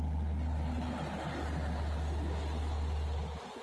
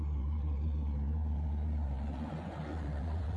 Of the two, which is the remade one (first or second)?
second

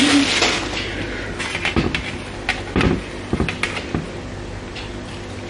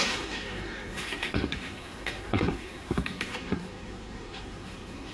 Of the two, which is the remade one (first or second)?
second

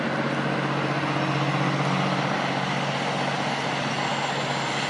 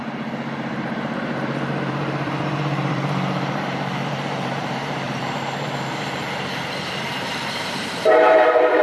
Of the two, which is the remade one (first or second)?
second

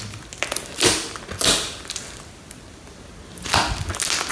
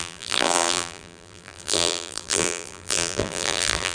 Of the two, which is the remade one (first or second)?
second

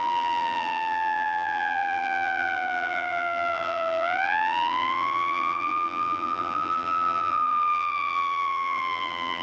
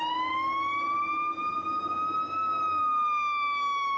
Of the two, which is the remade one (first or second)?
first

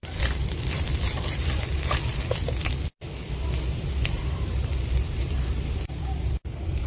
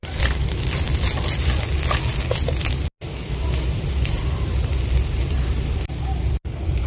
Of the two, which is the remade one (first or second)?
first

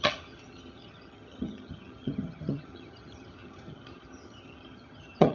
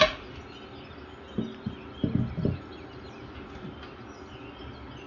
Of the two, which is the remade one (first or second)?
first